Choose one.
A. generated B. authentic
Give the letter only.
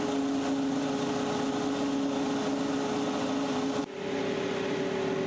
B